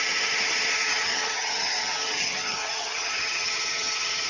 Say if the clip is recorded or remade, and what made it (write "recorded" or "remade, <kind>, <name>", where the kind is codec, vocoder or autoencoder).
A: remade, vocoder, HiFi-GAN